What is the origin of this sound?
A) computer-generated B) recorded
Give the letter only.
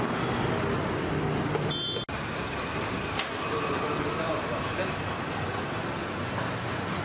B